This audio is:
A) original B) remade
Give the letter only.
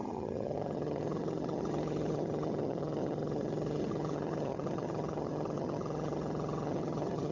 B